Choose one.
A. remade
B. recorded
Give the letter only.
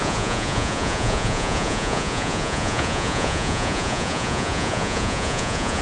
A